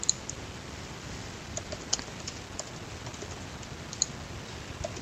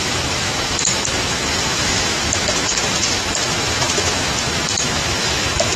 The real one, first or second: first